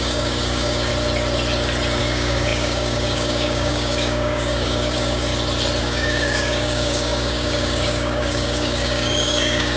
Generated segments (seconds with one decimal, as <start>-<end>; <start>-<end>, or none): 0.0-0.9; 2.0-5.3; 5.8-9.8